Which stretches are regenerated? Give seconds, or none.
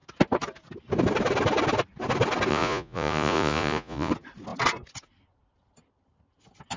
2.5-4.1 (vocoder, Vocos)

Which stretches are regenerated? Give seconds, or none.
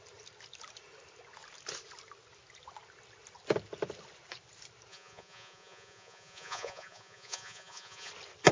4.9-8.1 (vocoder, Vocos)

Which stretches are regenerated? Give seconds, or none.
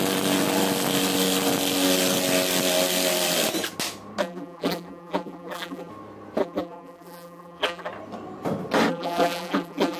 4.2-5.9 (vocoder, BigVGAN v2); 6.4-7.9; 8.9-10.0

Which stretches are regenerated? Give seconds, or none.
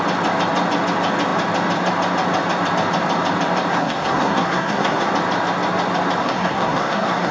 3.7-5.1 (codec, SNAC); 6.2-7.3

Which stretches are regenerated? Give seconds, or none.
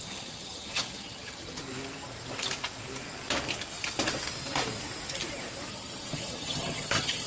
0.0-1.6 (vocoder, HiFi-GAN); 5.7-7.3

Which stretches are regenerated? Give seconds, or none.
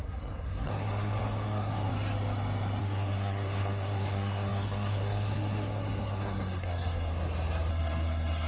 0.0-1.9 (codec, SNAC); 2.8-7.1; 7.7-8.5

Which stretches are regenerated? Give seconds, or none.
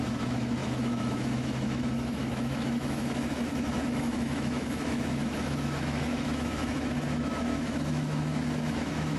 0.0-9.2 (autoencoder, DAC-VAE)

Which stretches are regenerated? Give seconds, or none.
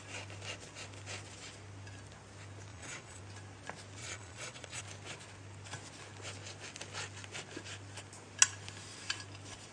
2.7-3.2 (vocoder, Vocos); 4.0-4.8